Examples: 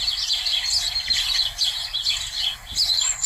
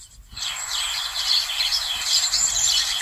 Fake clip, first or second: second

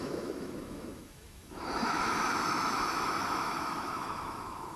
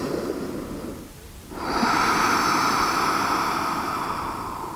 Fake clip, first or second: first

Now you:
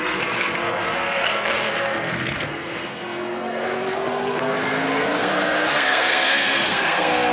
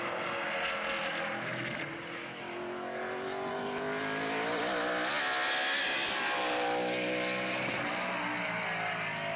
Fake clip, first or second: first